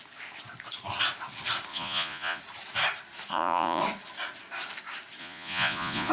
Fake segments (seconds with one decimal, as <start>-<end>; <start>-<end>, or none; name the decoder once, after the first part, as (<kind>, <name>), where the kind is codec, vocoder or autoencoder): 1.7-2.4 (vocoder, Vocos); 3.3-3.8; 5.2-6.1